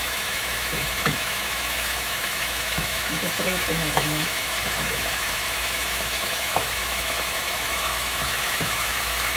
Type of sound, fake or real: fake